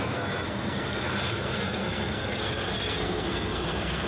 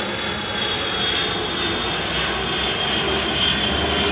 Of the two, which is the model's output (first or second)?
first